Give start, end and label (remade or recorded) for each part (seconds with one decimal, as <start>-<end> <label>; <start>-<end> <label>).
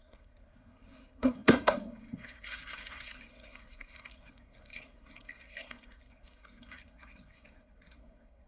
0.0-8.5 remade